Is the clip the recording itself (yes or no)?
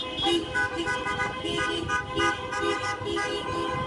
yes